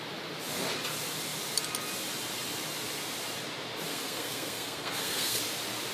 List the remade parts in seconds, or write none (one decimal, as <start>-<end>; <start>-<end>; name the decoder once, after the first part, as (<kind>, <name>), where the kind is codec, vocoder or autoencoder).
3.9-5.4 (codec, SNAC)